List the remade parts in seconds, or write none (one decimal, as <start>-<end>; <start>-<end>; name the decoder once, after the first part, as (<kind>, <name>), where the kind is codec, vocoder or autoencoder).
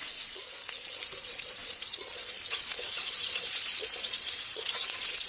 0.0-0.6 (vocoder, Vocos); 1.2-5.3